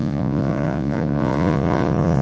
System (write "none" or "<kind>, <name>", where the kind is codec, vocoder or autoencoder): vocoder, Vocos